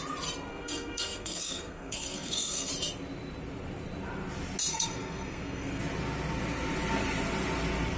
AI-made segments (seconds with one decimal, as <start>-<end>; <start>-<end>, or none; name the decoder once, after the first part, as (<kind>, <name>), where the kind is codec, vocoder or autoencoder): 0.5-2.7 (codec, SNAC); 4.7-5.8